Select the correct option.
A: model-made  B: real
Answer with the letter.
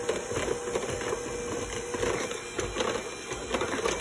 B